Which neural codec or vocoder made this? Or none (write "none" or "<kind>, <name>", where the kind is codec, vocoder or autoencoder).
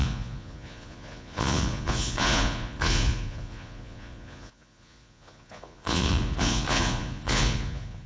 vocoder, Vocos